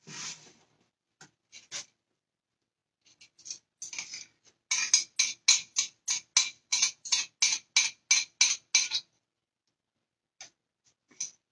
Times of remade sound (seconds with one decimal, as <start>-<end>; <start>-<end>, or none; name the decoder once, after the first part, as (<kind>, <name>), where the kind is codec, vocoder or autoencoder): 6.7-7.3 (vocoder, Vocos)